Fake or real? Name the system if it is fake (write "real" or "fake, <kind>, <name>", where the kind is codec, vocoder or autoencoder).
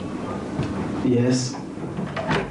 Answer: real